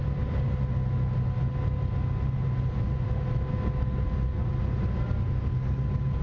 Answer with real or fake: real